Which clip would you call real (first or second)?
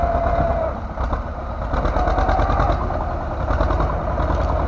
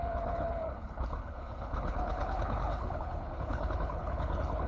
first